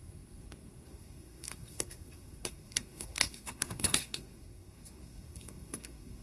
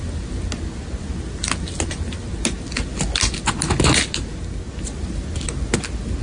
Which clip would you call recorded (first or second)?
second